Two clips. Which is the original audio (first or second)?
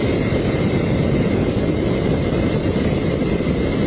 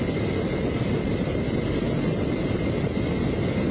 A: second